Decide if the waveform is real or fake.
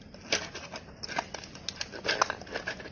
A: real